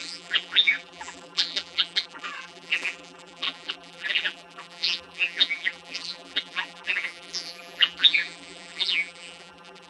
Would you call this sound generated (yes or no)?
yes